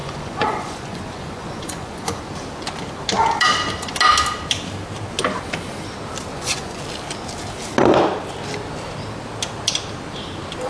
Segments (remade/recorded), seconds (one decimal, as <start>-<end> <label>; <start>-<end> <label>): 0.0-2.2 remade; 2.2-6.3 recorded; 6.3-6.8 remade; 6.8-10.7 recorded